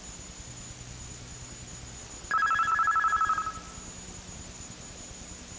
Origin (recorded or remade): recorded